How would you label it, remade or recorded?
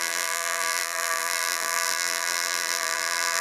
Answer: remade